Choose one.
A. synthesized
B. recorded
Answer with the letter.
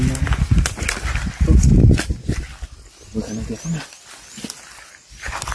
B